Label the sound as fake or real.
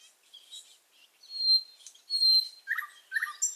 real